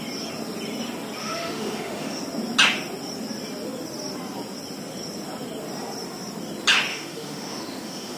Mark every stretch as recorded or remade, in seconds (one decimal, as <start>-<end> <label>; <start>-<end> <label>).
0.0-1.2 recorded; 1.2-2.2 remade; 2.2-6.9 recorded; 6.9-8.2 remade